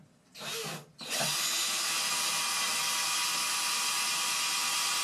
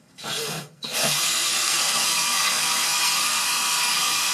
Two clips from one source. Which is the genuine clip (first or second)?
first